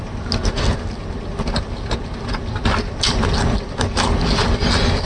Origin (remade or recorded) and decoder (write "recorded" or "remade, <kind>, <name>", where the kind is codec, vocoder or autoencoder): recorded